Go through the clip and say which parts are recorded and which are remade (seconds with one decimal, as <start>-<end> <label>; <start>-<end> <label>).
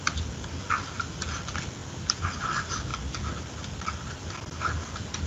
0.0-5.3 recorded